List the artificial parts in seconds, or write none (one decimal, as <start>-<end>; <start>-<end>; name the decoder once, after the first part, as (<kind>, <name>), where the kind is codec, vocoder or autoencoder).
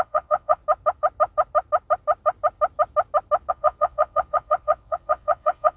0.0-0.6 (vocoder, WaveNeXt); 3.5-5.8